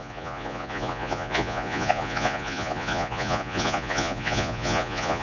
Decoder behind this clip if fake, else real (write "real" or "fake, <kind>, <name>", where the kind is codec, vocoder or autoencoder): fake, vocoder, Vocos